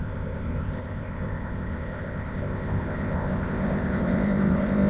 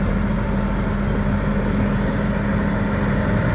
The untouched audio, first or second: second